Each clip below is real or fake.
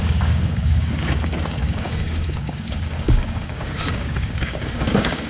fake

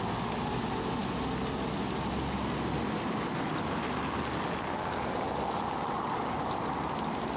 real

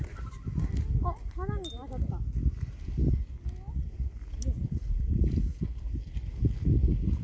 real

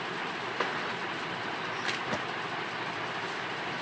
real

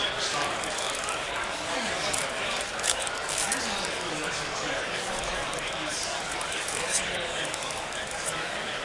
fake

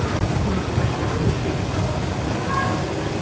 real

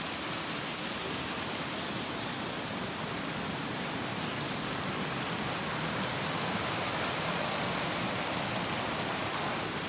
real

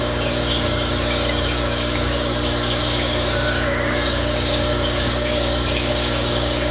fake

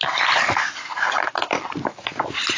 real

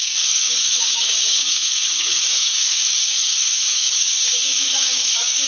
fake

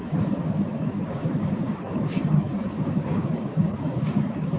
fake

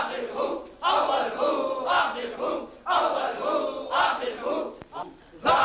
real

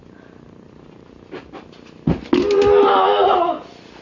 real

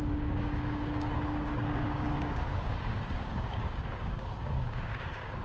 fake